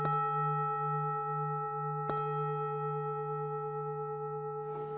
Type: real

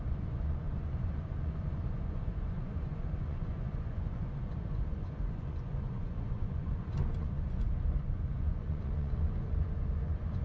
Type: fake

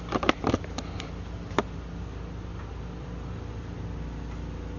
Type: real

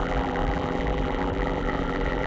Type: fake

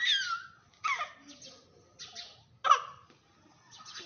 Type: real